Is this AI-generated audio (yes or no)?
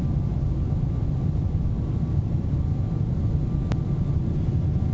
no